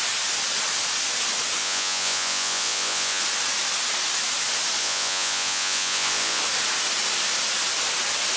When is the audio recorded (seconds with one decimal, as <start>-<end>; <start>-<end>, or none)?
0.0-1.6; 3.2-4.8; 6.4-8.4